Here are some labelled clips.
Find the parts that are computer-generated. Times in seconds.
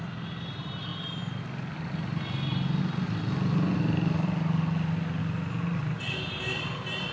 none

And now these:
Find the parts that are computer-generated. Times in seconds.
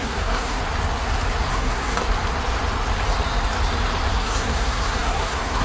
0.0-0.6 (codec, SNAC); 1.5-2.0; 4.1-5.6